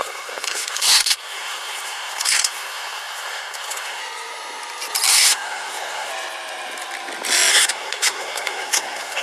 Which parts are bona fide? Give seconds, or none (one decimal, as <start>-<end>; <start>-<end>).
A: 4.0-5.1; 6.1-7.5